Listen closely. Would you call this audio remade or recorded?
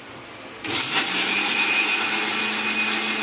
recorded